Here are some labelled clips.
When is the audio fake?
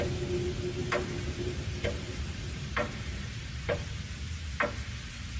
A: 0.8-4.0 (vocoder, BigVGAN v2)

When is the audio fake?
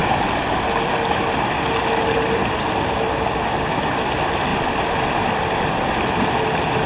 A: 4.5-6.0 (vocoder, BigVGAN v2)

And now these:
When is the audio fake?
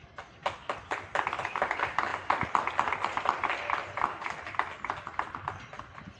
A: none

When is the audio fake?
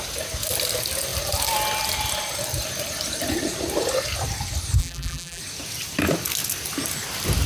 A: 4.8-5.4 (vocoder, BigVGAN v2)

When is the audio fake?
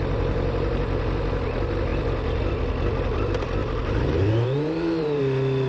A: 3.6-5.2 (vocoder, BigVGAN v2)